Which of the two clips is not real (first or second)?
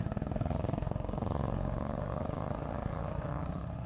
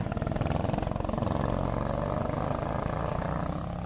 first